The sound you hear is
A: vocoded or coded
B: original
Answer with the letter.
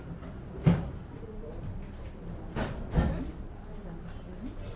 B